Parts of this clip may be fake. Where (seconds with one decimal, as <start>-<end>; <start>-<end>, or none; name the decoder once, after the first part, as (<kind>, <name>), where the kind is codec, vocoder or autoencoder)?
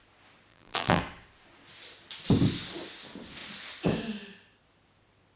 0.5-1.0 (vocoder, BigVGAN v2)